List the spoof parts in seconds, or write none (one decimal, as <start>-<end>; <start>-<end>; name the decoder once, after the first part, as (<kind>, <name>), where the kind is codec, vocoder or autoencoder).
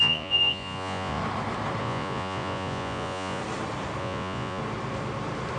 0.0-1.2 (vocoder, Vocos); 1.8-3.4; 4.0-4.6